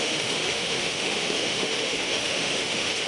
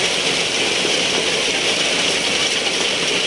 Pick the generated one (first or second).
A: first